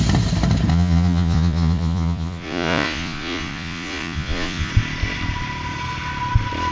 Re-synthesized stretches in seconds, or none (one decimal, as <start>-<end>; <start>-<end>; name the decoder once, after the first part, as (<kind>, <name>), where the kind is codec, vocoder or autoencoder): 0.7-4.7 (vocoder, Vocos)